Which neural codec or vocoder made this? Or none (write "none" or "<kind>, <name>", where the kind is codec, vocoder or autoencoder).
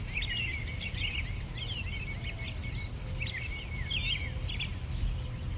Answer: none